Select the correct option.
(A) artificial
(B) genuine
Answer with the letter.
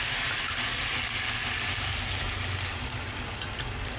B